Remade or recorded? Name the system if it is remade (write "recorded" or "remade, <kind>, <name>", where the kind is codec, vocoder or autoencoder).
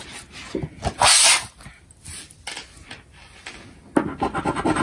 recorded